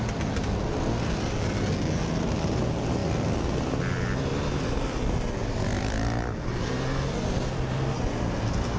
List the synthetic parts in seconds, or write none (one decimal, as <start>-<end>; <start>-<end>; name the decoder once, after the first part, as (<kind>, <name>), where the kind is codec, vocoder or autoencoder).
5.4-6.7 (vocoder, BigVGAN v2)